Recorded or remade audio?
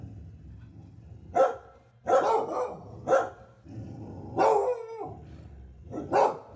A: recorded